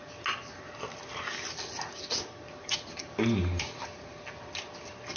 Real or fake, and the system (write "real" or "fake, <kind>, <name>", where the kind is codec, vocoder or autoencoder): real